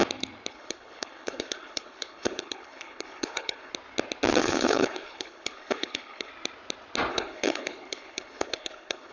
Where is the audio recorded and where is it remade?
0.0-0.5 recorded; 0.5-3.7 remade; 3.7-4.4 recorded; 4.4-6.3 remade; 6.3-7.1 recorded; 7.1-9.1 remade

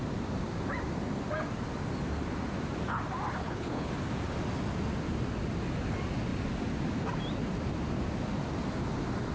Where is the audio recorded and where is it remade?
0.0-3.4 recorded; 3.4-3.9 remade; 3.9-9.3 recorded